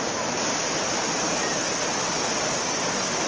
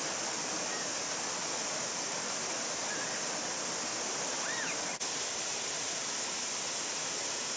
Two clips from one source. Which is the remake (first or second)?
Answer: first